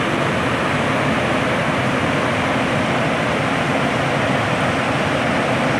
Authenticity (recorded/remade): recorded